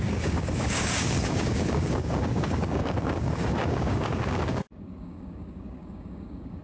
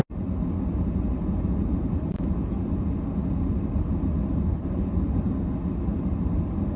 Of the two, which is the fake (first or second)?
first